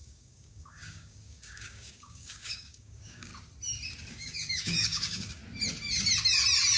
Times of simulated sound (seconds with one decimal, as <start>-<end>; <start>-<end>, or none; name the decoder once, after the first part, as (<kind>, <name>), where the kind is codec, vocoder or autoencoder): 0.0-3.3 (codec, DAC); 4.1-5.4